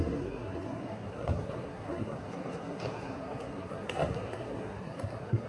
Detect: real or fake fake